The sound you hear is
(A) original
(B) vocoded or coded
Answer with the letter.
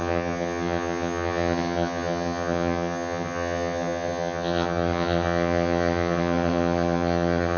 B